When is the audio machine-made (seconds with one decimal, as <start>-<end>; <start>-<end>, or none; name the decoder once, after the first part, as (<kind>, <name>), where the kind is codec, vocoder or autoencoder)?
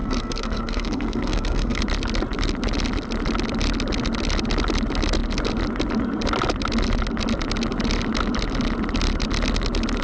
0.0-1.8 (codec, SNAC)